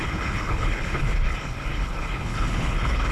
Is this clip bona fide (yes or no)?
no